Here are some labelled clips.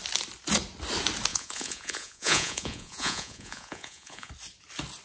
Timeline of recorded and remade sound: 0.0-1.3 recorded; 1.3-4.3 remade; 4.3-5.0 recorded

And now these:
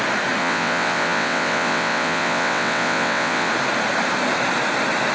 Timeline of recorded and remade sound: 0.0-0.4 recorded; 0.4-3.5 remade; 3.5-5.1 recorded

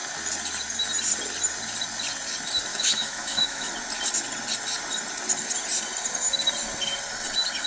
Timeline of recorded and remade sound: 0.0-2.7 recorded; 2.7-3.7 remade; 3.7-7.7 recorded

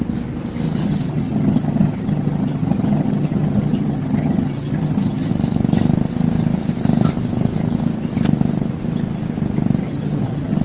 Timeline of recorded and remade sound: 0.0-0.8 recorded; 0.8-5.3 remade; 5.3-9.8 recorded; 9.8-10.6 remade

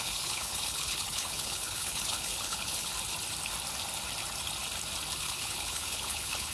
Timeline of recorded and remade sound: 0.0-2.9 remade; 2.9-5.2 recorded; 5.2-6.5 remade

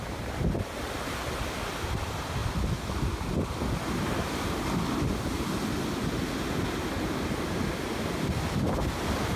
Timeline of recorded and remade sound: 0.0-9.4 recorded